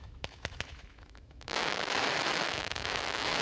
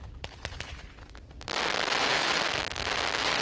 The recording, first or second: second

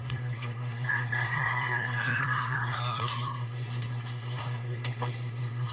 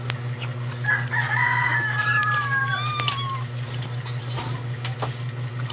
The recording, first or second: second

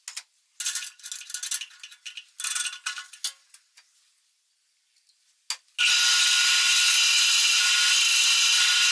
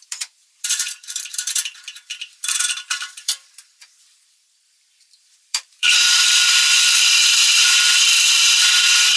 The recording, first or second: first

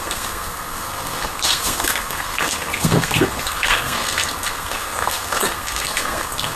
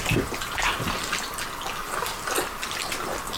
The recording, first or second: second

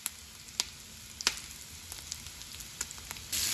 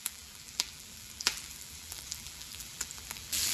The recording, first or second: first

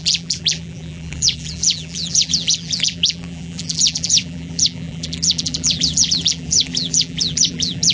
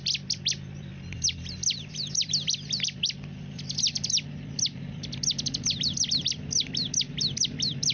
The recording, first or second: second